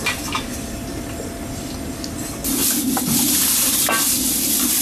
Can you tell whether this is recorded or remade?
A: recorded